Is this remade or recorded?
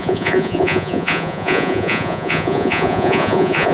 remade